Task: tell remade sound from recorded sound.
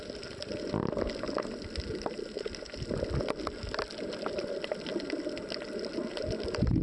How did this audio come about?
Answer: recorded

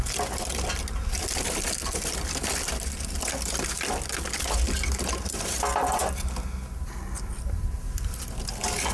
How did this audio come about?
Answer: recorded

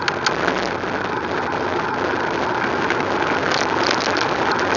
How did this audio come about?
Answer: recorded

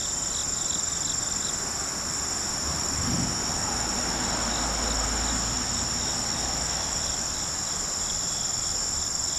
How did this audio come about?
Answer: recorded